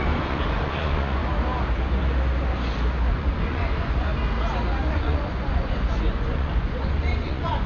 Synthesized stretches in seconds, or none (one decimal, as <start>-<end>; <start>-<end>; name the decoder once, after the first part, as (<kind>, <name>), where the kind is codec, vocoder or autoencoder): 0.0-1.2 (vocoder, Vocos); 3.1-4.1; 4.9-7.7